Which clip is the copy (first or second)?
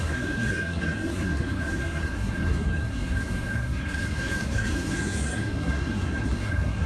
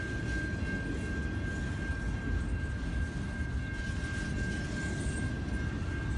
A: first